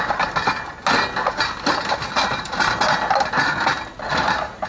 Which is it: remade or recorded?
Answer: recorded